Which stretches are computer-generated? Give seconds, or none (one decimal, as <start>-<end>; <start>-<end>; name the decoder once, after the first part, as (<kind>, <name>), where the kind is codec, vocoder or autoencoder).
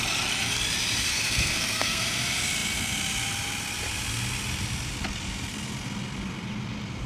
1.1-2.0 (codec, SNAC)